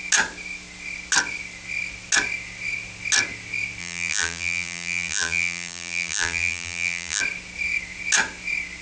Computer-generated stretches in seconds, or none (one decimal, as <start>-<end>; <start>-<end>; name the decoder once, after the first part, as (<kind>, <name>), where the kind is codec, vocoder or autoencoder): 3.8-7.2 (vocoder, BigVGAN v2)